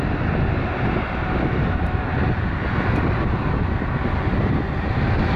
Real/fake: real